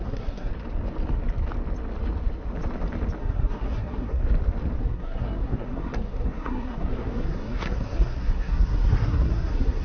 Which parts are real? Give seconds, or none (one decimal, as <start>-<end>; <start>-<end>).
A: 0.5-3.2; 4.2-4.8